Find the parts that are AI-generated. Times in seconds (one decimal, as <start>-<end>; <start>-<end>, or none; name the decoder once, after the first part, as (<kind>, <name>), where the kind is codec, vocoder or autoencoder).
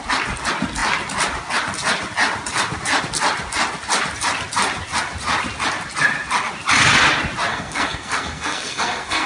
7.5-9.3 (codec, SNAC)